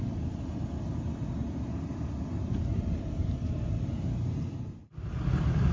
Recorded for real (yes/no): yes